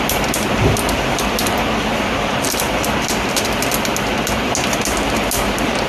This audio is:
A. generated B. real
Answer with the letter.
B